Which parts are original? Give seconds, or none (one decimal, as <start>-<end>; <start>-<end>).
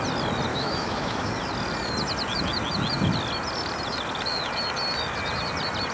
0.0-0.5; 1.3-5.9